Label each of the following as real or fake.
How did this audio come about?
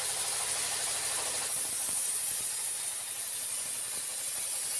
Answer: real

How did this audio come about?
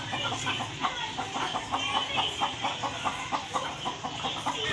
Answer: real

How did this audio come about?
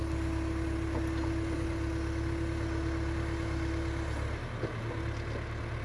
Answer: real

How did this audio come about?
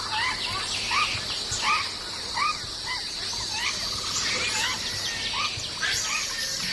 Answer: real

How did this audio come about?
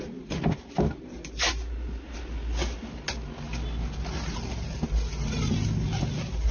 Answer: real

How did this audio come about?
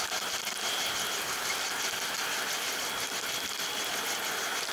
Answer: real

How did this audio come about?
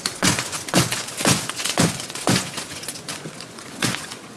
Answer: fake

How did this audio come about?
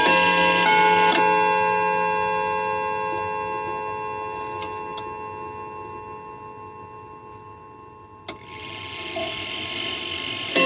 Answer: real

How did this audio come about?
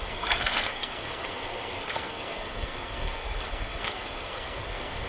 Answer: fake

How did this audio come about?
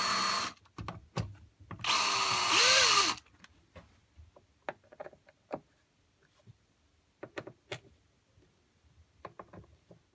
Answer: real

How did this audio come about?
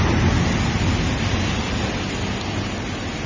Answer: real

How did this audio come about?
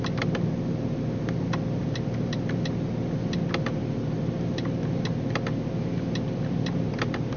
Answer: real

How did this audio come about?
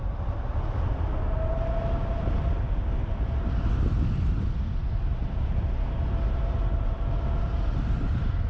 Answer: real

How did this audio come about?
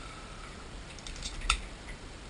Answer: real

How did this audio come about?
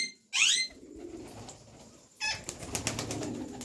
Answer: real